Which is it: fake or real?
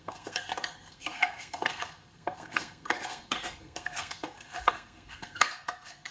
fake